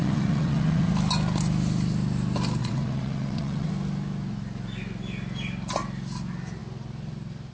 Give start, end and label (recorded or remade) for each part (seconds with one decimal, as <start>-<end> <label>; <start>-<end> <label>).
0.0-0.9 remade; 0.9-2.6 recorded; 2.6-3.7 remade; 3.7-7.5 recorded